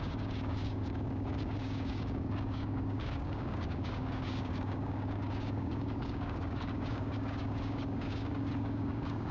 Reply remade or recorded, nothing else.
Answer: remade